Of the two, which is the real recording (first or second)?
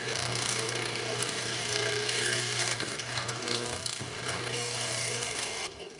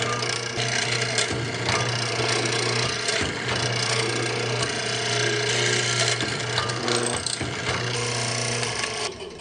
second